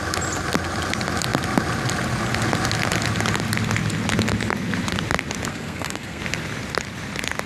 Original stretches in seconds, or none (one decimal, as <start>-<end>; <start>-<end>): 0.0-5.5; 6.2-7.5